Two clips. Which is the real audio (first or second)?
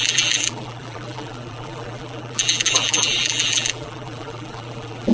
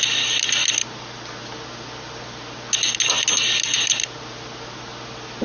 second